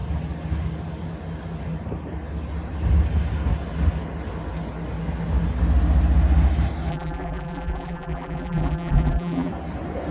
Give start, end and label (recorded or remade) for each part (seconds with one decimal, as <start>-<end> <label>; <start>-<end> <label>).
0.0-6.9 recorded; 6.9-9.5 remade; 9.5-10.1 recorded